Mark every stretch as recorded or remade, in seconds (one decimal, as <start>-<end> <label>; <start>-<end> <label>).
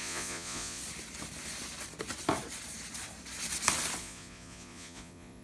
0.0-0.8 remade; 0.8-4.0 recorded; 4.0-5.4 remade